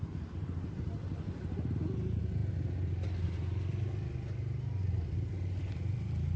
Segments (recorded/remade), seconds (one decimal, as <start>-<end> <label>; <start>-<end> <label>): 0.0-6.4 recorded